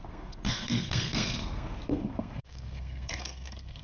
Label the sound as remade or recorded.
remade